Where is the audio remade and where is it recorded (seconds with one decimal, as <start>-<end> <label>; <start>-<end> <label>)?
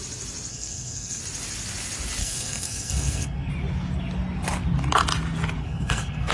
0.0-0.5 recorded; 0.5-1.2 remade; 1.2-2.2 recorded; 2.2-3.5 remade; 3.5-5.6 recorded; 5.6-6.3 remade